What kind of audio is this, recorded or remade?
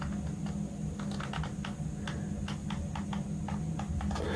recorded